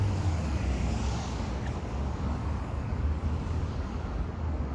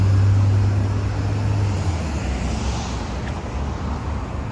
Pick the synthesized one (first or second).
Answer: first